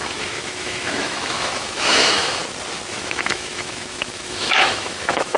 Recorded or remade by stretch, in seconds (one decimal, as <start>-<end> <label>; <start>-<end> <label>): 0.0-2.4 remade; 2.4-2.9 recorded; 2.9-5.4 remade